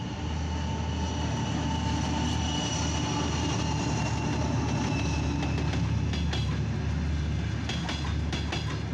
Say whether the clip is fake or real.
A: real